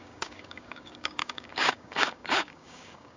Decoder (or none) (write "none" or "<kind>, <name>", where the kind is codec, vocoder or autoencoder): codec, DAC